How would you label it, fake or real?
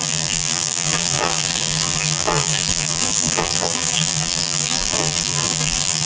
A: fake